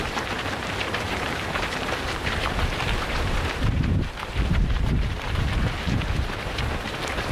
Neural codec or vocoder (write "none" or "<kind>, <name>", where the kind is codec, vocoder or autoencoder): vocoder, BigVGAN v2